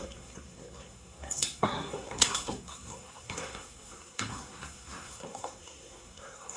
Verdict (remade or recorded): remade